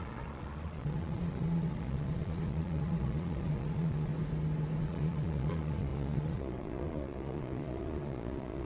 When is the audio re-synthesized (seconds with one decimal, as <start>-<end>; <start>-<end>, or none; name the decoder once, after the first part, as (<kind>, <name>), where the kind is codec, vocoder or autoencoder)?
0.0-4.1 (vocoder, Vocos); 4.8-8.6